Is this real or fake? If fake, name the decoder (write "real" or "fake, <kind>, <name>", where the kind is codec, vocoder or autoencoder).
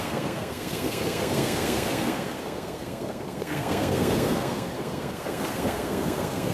fake, codec, SNAC